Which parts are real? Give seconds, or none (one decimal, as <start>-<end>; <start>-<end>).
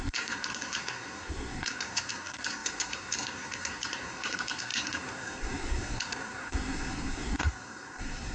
none